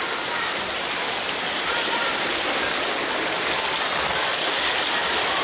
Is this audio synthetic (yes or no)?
no